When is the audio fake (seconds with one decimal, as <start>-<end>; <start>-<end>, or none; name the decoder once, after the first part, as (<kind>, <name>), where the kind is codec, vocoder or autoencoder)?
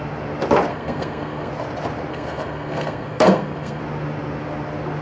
0.7-1.5 (codec, SNAC); 2.1-3.8